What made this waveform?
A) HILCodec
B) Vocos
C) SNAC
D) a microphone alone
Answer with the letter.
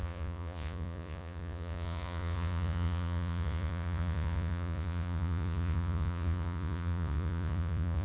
B